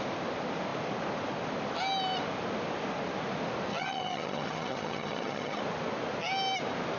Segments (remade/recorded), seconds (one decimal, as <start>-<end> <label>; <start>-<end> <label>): 0.0-3.7 recorded; 3.7-5.6 remade; 5.6-7.0 recorded